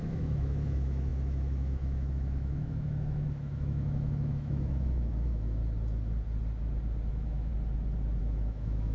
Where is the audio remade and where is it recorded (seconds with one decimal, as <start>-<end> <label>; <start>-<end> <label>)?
0.0-5.6 remade; 5.6-7.1 recorded; 7.1-7.5 remade; 7.5-8.2 recorded; 8.2-8.9 remade